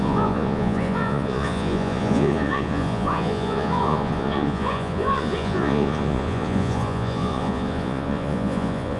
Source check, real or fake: fake